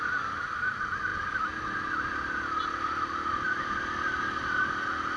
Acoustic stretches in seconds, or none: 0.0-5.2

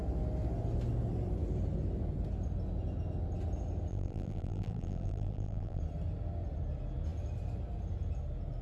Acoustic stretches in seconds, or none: 0.0-3.9; 5.8-8.6

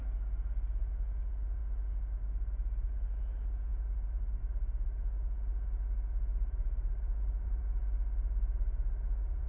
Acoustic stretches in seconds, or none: 0.0-3.7; 4.4-6.3; 7.6-9.5